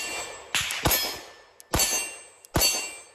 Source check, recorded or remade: recorded